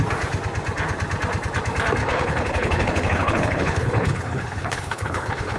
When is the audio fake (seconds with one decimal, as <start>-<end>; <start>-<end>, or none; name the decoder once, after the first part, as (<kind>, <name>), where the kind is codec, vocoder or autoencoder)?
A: 2.0-5.6 (codec, HILCodec)